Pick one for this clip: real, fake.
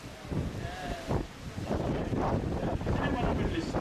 real